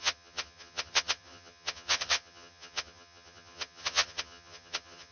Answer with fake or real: fake